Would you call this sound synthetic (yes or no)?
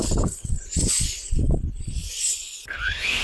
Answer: yes